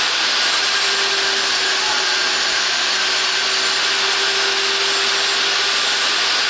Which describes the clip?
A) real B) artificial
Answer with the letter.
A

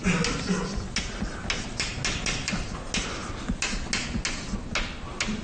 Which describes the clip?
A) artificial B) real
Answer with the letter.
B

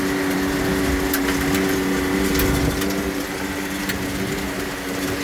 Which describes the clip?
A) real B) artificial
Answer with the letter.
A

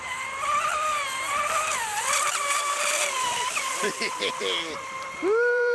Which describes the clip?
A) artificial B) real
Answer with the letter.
A